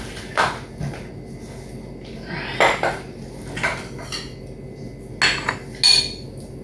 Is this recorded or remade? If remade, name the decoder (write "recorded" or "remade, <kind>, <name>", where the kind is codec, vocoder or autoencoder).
recorded